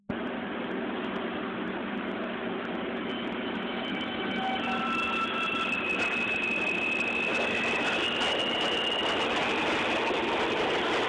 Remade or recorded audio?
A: recorded